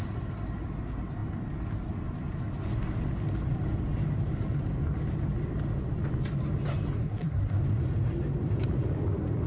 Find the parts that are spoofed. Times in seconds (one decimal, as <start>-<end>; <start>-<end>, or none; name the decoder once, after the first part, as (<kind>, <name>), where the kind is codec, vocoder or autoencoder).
7.0-7.6 (codec, SNAC)